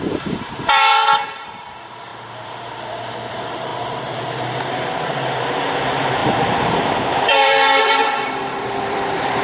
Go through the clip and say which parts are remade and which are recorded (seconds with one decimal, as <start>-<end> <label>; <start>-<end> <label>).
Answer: 0.0-3.7 remade; 3.7-4.4 recorded; 4.4-9.4 remade